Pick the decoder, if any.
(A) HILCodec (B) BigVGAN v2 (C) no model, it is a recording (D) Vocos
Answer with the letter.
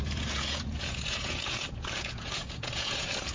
D